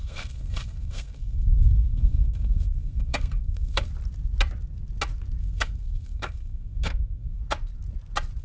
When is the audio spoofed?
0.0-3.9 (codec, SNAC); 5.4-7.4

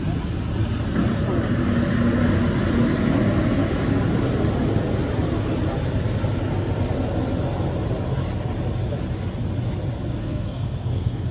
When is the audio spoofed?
10.2-11.3 (codec, SNAC)

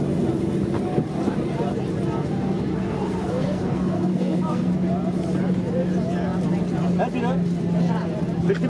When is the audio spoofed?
2.7-4.7 (codec, SNAC)

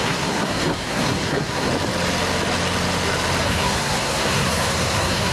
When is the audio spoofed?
0.0-1.7 (codec, SNAC); 3.4-5.3

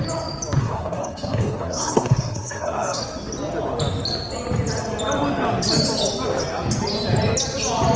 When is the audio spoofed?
0.6-3.0 (codec, SNAC)

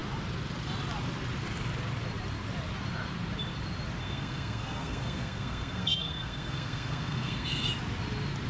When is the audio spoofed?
4.0-7.7 (codec, SNAC)

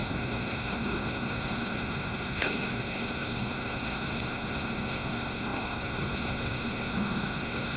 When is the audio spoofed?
0.0-7.8 (codec, SNAC)

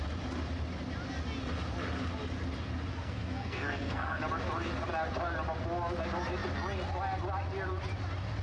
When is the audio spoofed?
2.9-4.2 (codec, SNAC)